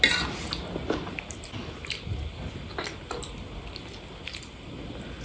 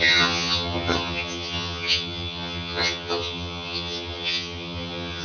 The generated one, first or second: second